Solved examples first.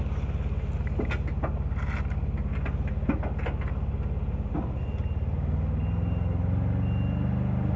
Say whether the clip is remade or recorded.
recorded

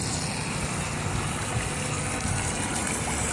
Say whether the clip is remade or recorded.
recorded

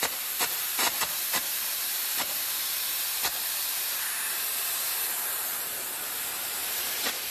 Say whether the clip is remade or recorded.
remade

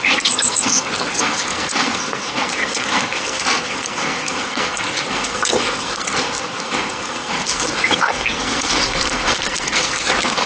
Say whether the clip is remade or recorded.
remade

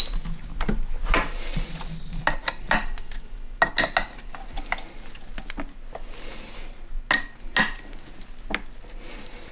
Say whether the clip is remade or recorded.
recorded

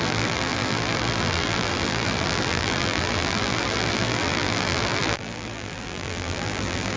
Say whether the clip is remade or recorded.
remade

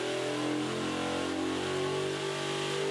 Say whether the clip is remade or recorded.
recorded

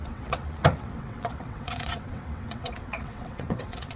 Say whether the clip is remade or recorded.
remade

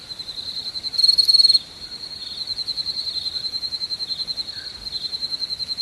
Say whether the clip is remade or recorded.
recorded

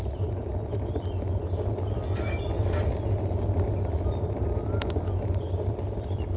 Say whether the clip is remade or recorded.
recorded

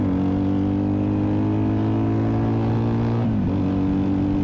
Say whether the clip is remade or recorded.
recorded